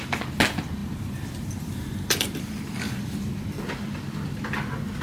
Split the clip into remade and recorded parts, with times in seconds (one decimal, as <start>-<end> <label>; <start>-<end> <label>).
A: 0.0-0.8 recorded; 0.8-3.7 remade; 3.7-5.0 recorded